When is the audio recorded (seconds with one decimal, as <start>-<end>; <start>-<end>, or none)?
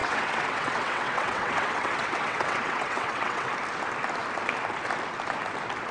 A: 3.5-5.9